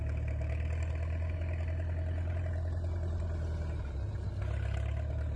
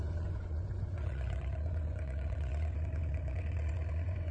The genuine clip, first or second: first